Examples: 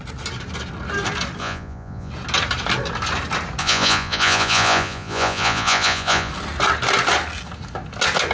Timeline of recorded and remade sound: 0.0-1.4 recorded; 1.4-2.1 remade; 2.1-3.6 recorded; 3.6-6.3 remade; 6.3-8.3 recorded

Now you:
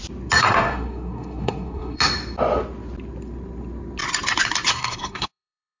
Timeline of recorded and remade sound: 0.0-0.4 recorded; 0.4-2.0 remade; 2.0-4.7 recorded; 4.7-5.8 remade